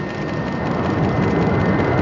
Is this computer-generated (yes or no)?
no